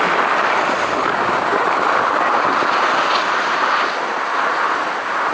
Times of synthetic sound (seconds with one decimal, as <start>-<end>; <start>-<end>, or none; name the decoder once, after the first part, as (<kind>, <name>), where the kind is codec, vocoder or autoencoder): 1.5-4.7 (vocoder, BigVGAN v2)